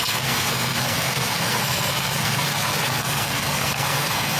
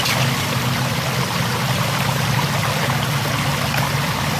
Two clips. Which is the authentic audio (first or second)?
second